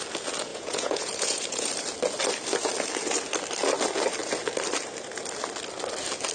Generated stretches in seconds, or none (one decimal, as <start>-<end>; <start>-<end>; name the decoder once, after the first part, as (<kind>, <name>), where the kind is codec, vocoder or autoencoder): 0.5-1.7 (vocoder, Vocos)